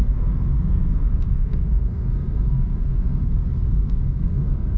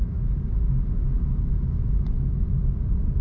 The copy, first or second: first